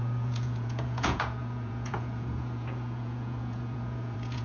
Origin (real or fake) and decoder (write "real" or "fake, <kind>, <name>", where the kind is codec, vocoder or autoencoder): fake, vocoder, Vocos